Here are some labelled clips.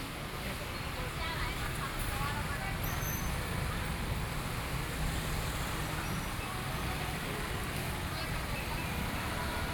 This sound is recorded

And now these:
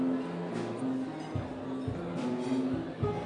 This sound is recorded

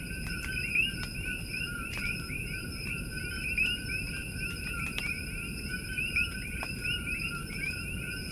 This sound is remade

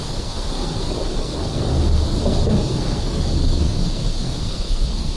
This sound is remade